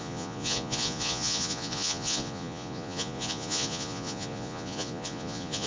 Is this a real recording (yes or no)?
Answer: no